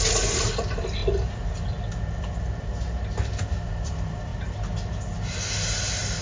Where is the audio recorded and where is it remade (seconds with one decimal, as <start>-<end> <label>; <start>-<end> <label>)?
0.0-1.0 remade; 1.0-2.2 recorded; 2.2-4.3 remade; 4.3-6.2 recorded

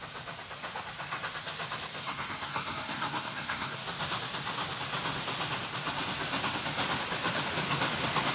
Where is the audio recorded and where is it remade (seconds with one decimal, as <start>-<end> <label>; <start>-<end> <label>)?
0.0-2.0 recorded; 2.0-3.8 remade; 3.8-8.3 recorded

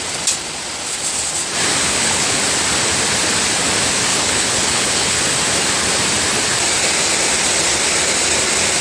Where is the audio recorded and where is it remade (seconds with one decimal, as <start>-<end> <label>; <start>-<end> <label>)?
0.0-1.8 recorded; 1.8-2.4 remade; 2.4-4.1 recorded; 4.1-5.2 remade; 5.2-8.8 recorded

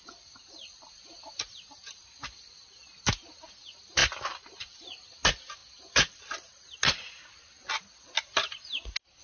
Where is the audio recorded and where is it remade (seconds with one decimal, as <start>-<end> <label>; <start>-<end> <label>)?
0.0-4.0 recorded; 4.0-4.8 remade; 4.8-5.6 recorded; 5.6-6.2 remade; 6.2-9.2 recorded

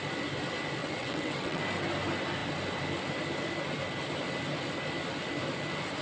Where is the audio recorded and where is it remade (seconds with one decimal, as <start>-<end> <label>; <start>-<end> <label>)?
0.0-0.8 recorded; 0.8-1.6 remade; 1.6-6.0 recorded

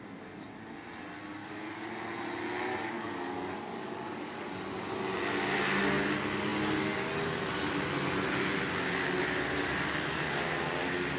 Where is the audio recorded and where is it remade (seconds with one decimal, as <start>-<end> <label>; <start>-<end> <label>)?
0.0-1.4 recorded; 1.4-1.9 remade; 1.9-2.7 recorded; 2.7-4.9 remade; 4.9-11.2 recorded

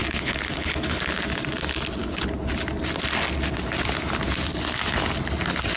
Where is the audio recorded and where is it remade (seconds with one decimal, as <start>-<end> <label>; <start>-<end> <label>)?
0.0-1.0 remade; 1.0-2.0 recorded; 2.0-2.5 remade; 2.5-5.8 recorded

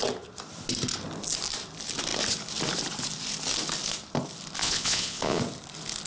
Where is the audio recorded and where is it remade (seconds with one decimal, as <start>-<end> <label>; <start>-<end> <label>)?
0.0-4.6 recorded; 4.6-5.4 remade; 5.4-6.1 recorded